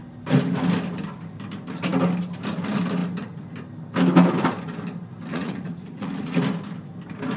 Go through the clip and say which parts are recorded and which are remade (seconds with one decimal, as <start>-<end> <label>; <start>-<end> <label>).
0.0-5.3 recorded; 5.3-6.4 remade; 6.4-7.4 recorded